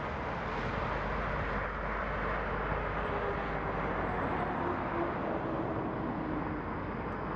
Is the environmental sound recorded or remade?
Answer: recorded